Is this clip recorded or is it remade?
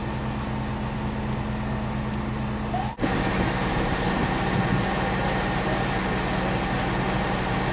recorded